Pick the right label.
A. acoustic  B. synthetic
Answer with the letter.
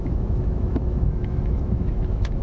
B